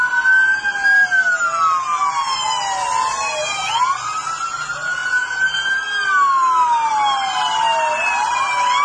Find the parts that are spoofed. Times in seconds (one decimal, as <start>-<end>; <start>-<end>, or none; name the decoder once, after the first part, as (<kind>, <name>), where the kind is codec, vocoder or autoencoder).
none